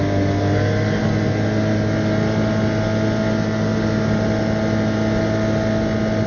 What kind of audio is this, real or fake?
real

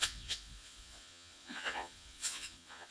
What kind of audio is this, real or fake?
fake